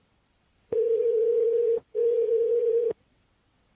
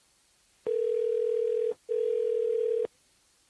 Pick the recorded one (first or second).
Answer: second